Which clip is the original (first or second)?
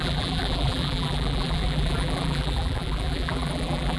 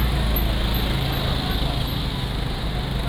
second